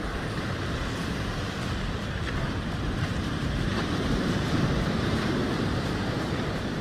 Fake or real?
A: fake